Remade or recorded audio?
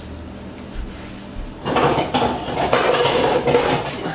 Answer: recorded